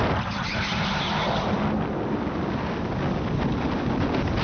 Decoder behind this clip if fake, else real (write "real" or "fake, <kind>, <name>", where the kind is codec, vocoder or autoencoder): real